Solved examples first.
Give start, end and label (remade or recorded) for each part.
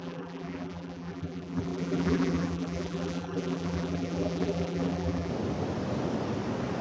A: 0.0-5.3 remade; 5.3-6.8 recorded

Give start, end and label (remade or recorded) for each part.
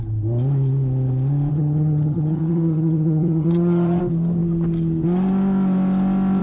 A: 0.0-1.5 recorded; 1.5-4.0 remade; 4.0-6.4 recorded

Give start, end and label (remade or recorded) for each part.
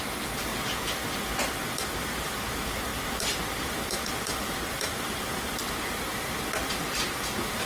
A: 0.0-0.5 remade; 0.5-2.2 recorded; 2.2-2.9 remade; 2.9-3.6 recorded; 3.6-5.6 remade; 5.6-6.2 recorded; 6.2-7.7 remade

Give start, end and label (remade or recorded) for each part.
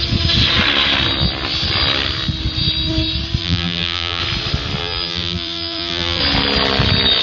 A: 0.0-3.4 recorded; 3.4-4.2 remade; 4.2-4.8 recorded; 4.8-6.2 remade; 6.2-7.2 recorded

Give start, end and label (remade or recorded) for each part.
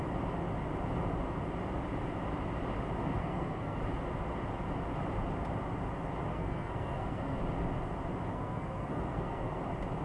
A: 0.0-3.2 recorded; 3.2-3.8 remade; 3.8-6.3 recorded; 6.3-7.4 remade; 7.4-8.3 recorded; 8.3-9.6 remade; 9.6-10.0 recorded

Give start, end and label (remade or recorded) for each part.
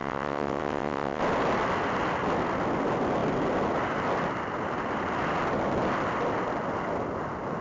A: 0.0-1.2 remade; 1.2-7.6 recorded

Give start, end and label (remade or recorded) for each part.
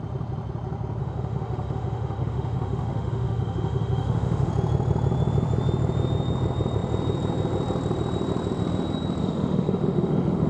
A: 0.0-1.0 recorded; 1.0-4.5 remade; 4.5-9.2 recorded; 9.2-10.5 remade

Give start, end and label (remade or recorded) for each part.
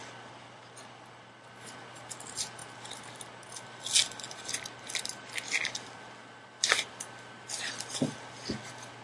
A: 0.0-9.0 recorded